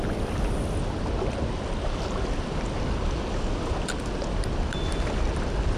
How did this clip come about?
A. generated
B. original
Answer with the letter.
B